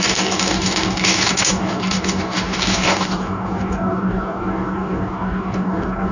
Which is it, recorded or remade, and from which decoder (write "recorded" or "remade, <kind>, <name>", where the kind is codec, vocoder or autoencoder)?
remade, codec, DAC